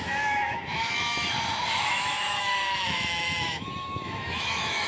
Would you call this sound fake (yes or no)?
yes